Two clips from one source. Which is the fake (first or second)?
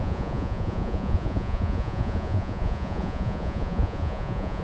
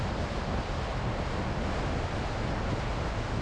first